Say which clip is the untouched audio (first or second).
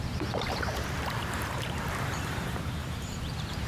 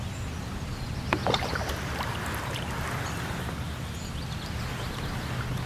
second